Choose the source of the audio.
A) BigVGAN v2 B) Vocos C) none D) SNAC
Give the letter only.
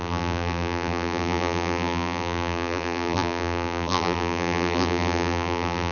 A